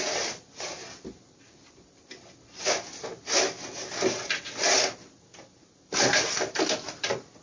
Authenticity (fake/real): real